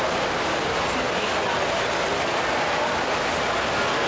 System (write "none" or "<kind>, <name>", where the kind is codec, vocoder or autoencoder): none